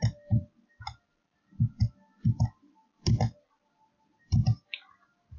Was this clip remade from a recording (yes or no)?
no